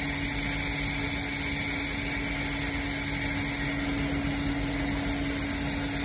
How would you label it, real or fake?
real